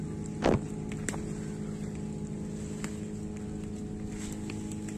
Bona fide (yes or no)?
yes